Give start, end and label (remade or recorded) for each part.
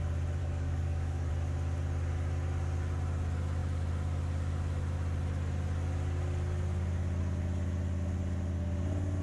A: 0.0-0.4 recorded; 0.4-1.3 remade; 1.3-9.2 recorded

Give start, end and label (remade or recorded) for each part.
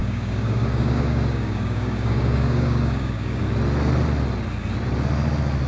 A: 0.0-3.4 remade; 3.4-5.7 recorded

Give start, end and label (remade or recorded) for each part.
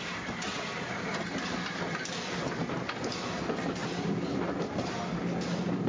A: 0.0-5.9 recorded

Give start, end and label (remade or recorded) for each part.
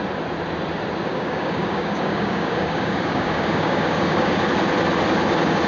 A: 0.0-1.1 recorded; 1.1-4.5 remade; 4.5-5.7 recorded